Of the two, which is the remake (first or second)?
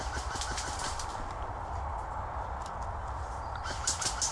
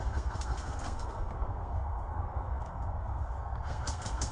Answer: second